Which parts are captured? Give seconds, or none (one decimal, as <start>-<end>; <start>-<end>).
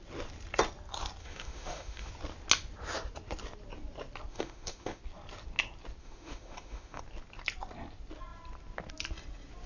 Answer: 0.0-1.2; 2.1-4.3; 5.0-6.0; 7.0-9.7